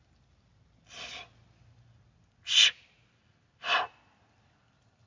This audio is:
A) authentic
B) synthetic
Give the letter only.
A